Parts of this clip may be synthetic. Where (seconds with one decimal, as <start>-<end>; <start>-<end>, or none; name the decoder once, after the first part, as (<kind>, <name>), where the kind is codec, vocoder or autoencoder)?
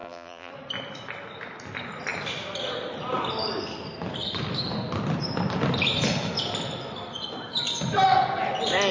0.0-0.5 (vocoder, BigVGAN v2)